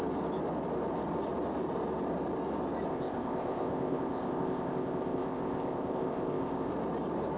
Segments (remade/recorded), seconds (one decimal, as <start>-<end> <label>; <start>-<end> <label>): 0.0-2.9 recorded; 2.9-6.7 remade; 6.7-7.4 recorded